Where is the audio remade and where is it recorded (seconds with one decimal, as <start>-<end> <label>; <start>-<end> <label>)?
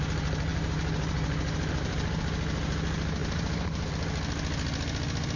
0.0-0.5 recorded; 0.5-2.2 remade; 2.2-3.2 recorded; 3.2-3.9 remade; 3.9-5.4 recorded